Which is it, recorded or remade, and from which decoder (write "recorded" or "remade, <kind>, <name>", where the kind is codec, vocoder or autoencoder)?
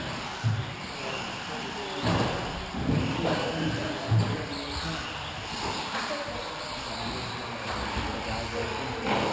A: recorded